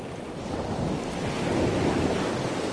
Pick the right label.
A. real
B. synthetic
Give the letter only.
A